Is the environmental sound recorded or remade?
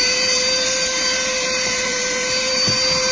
remade